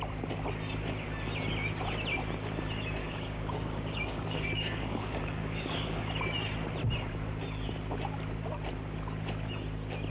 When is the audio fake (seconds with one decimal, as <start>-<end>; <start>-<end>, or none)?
3.0-6.1